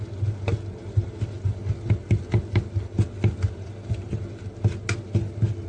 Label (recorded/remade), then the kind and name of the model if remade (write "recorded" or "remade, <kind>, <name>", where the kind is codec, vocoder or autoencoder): recorded